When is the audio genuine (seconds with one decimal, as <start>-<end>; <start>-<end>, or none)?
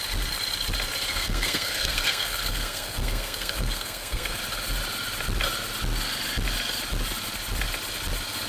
0.0-1.1; 4.4-8.5